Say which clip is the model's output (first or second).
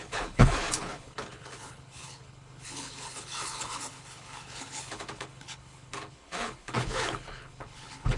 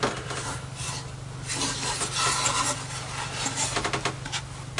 first